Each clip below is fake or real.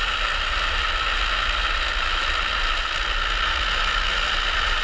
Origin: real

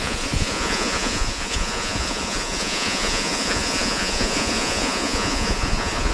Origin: fake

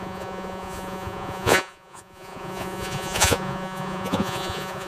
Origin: fake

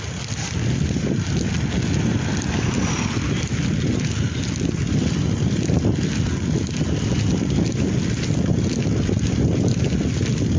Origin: real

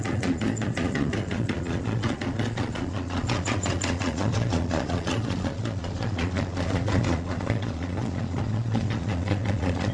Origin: fake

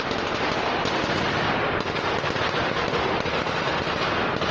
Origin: real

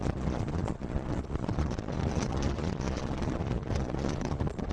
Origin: fake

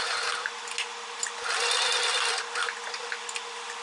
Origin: real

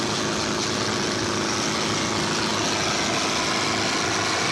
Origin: real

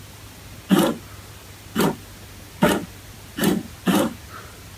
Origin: real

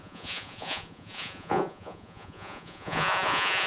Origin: fake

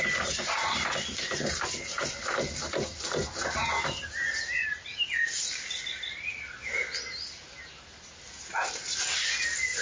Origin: real